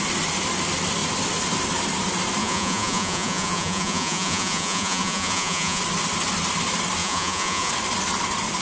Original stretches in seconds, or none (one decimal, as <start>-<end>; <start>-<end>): 0.0-2.4; 5.8-7.0; 7.7-8.6

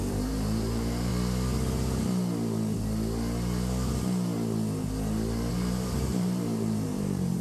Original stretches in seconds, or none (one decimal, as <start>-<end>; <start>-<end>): 1.1-5.5

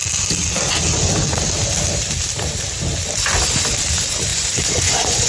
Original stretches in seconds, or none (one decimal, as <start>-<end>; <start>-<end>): 0.0-4.3

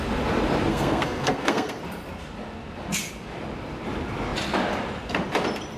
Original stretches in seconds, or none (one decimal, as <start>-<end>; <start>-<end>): 0.0-0.7; 1.8-5.8

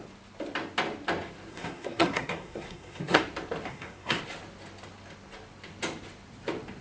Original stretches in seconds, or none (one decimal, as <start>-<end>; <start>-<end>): 0.0-1.5; 3.2-3.7; 4.2-6.8

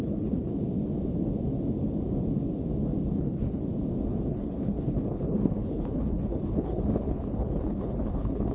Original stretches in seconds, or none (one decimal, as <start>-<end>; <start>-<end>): 0.5-3.2; 3.6-4.3

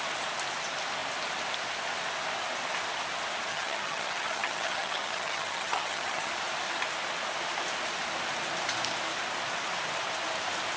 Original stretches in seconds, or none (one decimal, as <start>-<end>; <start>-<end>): 0.0-3.5; 6.3-10.8

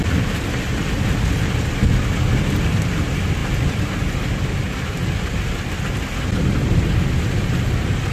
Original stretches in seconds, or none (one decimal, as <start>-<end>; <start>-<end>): 0.0-8.1